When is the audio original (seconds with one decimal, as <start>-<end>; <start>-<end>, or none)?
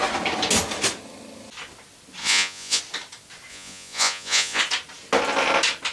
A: 0.0-2.2; 2.8-3.5; 4.6-5.9